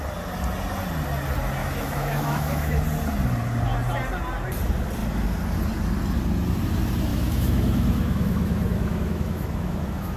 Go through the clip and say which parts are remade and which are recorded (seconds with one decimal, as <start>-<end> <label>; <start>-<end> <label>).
0.0-1.6 recorded; 1.6-2.8 remade; 2.8-7.1 recorded; 7.1-10.2 remade